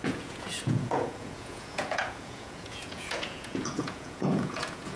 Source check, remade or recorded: remade